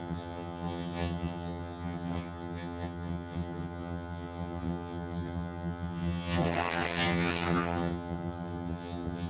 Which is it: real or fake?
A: fake